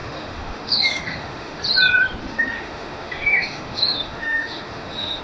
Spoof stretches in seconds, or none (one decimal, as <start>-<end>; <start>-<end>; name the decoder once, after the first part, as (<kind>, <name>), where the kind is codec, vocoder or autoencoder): 0.0-1.6 (autoencoder, DAC-VAE); 2.2-5.2